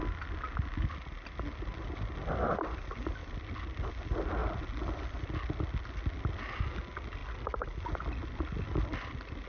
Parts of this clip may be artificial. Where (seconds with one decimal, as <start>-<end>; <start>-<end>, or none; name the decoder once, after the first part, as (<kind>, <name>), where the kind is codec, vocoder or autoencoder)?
none